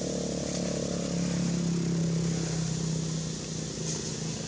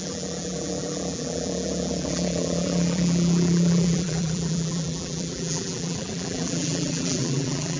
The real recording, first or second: first